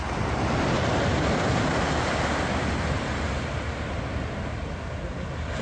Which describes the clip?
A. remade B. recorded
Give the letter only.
B